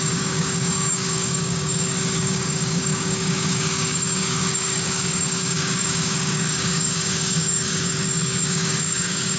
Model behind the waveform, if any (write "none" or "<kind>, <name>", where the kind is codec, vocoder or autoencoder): codec, DAC